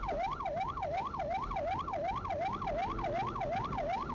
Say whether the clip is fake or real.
real